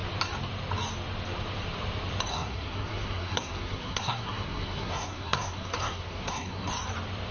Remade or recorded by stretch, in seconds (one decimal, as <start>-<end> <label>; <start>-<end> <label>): 0.0-2.3 recorded; 2.3-6.7 remade; 6.7-7.3 recorded